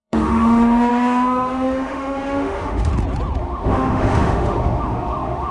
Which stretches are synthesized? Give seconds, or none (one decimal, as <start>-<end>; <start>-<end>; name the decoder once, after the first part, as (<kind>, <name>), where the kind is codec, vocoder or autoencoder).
0.0-2.9 (autoencoder, DAC-VAE); 3.4-5.5